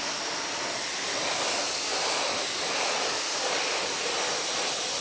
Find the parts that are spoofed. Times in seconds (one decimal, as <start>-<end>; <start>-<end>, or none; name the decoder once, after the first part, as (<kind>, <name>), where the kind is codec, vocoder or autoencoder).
0.0-5.0 (vocoder, BigVGAN v2)